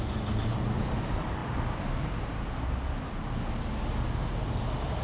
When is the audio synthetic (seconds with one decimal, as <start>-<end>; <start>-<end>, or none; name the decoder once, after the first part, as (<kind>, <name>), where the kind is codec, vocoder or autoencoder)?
none